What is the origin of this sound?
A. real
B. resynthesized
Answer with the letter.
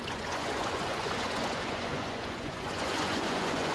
B